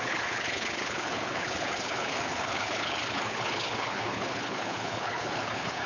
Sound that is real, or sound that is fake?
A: fake